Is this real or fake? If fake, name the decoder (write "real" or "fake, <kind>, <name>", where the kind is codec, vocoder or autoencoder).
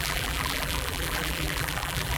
fake, vocoder, BigVGAN v2